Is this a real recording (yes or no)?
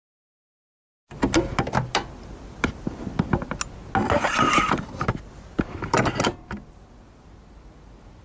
yes